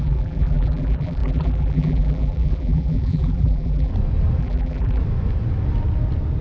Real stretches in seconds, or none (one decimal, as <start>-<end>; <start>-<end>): 3.9-4.4; 5.0-6.4